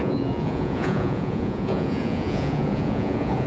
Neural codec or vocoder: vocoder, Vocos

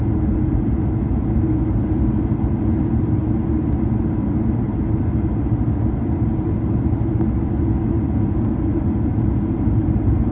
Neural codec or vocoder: none